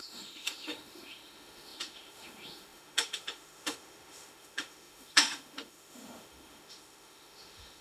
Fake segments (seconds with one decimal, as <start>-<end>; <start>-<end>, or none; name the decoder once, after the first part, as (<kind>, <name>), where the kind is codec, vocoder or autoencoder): 0.0-7.8 (autoencoder, DAC-VAE)